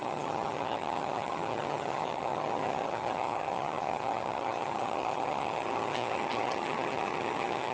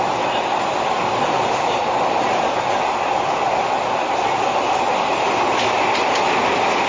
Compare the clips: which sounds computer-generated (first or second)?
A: first